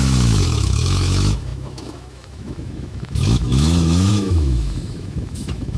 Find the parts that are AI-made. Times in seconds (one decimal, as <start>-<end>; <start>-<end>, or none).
0.0-5.8